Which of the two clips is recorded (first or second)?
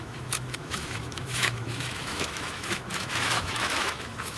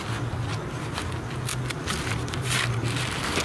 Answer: second